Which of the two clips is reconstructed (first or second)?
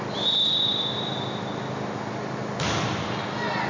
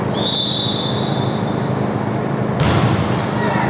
second